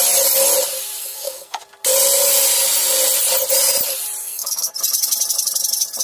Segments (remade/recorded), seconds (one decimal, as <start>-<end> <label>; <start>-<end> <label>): 0.0-1.0 recorded; 1.0-1.6 remade; 1.6-4.2 recorded; 4.2-4.7 remade; 4.7-6.0 recorded